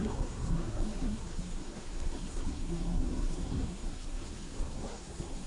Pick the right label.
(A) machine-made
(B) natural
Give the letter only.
A